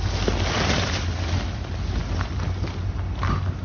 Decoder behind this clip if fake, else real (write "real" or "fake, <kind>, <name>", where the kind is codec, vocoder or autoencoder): real